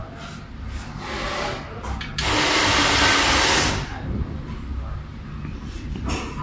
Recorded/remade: recorded